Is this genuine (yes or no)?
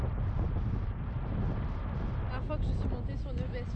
yes